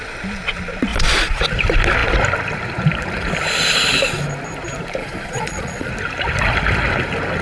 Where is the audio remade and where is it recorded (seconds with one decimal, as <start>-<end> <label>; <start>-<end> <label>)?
0.0-0.9 recorded; 0.9-1.4 remade; 1.4-5.0 recorded; 5.0-5.9 remade; 5.9-7.4 recorded

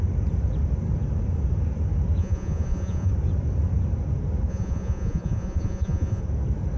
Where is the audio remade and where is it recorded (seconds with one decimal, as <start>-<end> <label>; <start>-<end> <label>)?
0.0-2.2 recorded; 2.2-3.1 remade; 3.1-4.5 recorded; 4.5-6.2 remade; 6.2-6.8 recorded

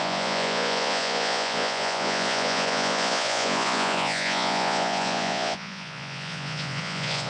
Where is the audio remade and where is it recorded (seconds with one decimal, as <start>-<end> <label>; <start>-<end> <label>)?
0.0-7.3 remade

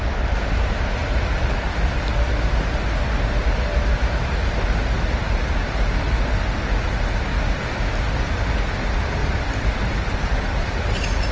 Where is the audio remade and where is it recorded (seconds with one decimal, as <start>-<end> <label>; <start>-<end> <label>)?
0.0-9.2 recorded; 9.2-9.8 remade; 9.8-11.3 recorded

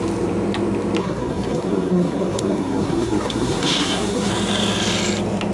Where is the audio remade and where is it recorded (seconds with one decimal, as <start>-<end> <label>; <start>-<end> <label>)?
0.0-1.0 recorded; 1.0-4.3 remade; 4.3-5.5 recorded